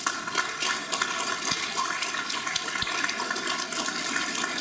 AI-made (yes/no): no